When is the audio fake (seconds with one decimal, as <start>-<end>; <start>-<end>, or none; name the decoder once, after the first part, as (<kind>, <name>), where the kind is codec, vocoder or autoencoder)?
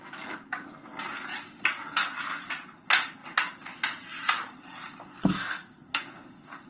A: 5.2-6.0 (codec, SNAC)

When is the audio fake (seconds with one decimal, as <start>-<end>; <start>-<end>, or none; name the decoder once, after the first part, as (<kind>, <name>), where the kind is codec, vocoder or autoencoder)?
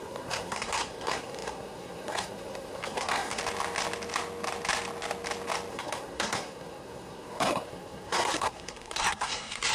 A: 0.0-3.4 (codec, SNAC); 5.7-9.7